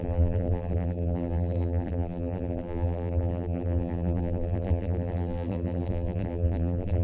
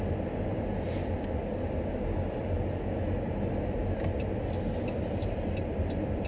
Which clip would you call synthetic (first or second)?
first